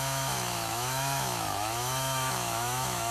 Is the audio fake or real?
fake